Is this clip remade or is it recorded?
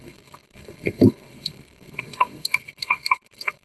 remade